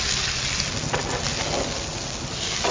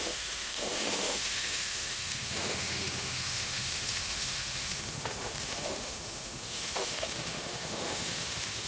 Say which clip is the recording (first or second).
first